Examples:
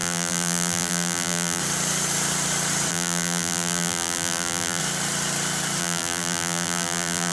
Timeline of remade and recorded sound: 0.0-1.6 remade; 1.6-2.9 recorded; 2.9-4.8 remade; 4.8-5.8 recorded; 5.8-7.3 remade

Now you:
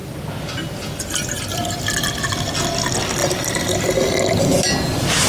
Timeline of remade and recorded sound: 0.0-2.5 remade; 2.5-3.2 recorded; 3.2-3.8 remade; 3.8-5.3 recorded